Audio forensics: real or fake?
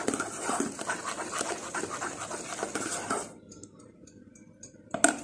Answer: real